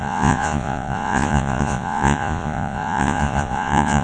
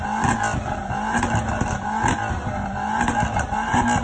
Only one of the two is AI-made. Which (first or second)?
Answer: first